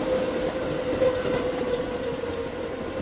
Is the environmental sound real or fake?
real